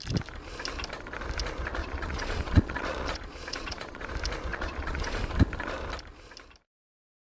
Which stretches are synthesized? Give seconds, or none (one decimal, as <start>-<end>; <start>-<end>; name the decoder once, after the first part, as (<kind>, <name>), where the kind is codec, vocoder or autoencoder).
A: 1.8-4.1 (vocoder, Vocos); 4.5-5.2

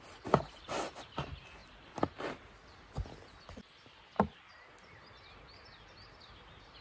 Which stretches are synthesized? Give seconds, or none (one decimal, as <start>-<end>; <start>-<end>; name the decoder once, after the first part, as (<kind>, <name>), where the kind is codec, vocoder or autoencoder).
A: none

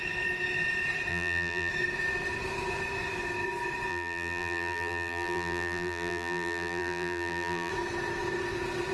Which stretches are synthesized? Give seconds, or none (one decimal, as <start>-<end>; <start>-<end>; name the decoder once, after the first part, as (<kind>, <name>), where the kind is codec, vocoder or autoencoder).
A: 1.1-1.7 (vocoder, BigVGAN v2); 3.9-7.7

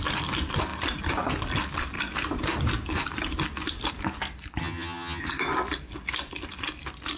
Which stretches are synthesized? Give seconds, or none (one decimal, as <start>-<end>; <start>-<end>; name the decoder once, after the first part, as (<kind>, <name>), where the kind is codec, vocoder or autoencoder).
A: 4.6-5.2 (vocoder, HiFi-GAN)

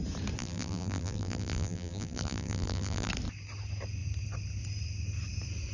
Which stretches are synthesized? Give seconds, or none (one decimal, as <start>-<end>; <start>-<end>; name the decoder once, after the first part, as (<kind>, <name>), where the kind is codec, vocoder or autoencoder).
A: 0.4-3.1 (vocoder, BigVGAN v2)

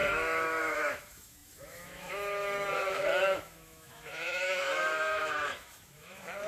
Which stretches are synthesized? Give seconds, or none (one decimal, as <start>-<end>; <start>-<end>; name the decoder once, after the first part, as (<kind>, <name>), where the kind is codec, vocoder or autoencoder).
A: 0.0-6.5 (autoencoder, DAC-VAE)

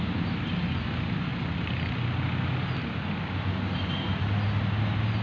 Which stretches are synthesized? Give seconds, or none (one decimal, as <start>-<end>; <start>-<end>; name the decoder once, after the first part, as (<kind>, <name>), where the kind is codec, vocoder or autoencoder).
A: none

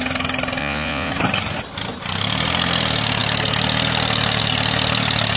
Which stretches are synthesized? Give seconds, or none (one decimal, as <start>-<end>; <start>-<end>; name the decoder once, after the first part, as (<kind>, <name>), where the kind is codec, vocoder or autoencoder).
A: 0.6-1.1 (vocoder, Vocos)